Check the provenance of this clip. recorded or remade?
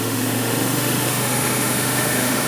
remade